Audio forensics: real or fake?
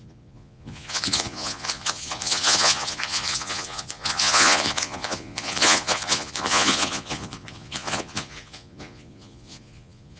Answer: fake